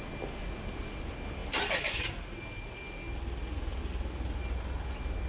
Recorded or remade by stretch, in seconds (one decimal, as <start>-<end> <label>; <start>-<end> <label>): 0.0-5.3 recorded